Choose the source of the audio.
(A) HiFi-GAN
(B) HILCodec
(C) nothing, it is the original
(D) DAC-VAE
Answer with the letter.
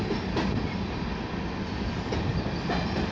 C